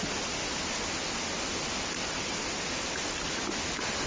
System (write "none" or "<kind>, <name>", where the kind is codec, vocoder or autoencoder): none